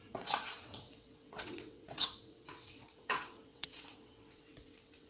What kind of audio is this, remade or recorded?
remade